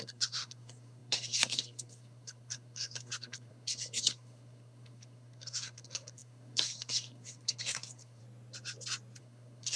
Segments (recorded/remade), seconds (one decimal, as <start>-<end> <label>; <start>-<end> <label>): 0.0-8.2 remade; 8.2-9.2 recorded; 9.2-9.8 remade